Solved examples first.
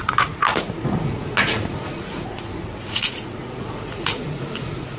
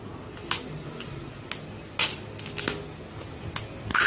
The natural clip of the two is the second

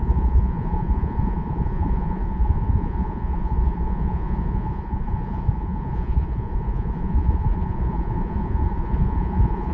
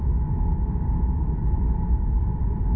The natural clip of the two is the second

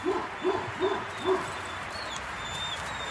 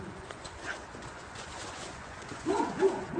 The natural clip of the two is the first